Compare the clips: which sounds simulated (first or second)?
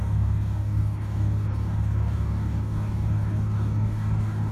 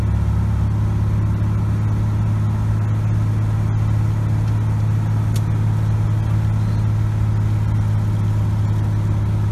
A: first